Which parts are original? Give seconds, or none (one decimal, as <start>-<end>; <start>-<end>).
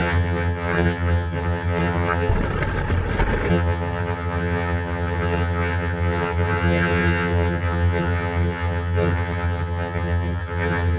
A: 2.3-3.5